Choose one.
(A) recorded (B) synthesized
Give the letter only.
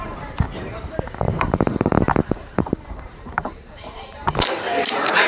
B